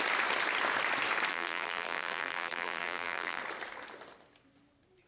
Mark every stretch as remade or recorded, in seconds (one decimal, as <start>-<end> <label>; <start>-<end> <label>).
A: 0.0-1.3 recorded; 1.3-3.4 remade; 3.4-5.1 recorded